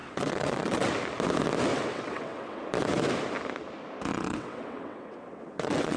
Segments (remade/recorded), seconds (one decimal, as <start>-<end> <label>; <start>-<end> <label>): 0.0-0.9 remade; 0.9-1.7 recorded; 1.7-2.6 remade; 2.6-4.1 recorded; 4.1-6.0 remade